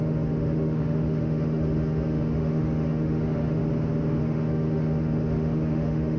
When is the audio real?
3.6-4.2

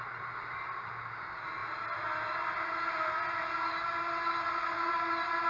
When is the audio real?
0.0-5.5

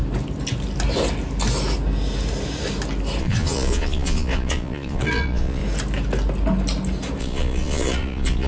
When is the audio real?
0.0-3.2; 5.6-7.2